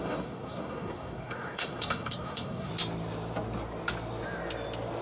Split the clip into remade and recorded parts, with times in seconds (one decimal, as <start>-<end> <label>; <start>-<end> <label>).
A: 0.0-2.7 remade; 2.7-5.0 recorded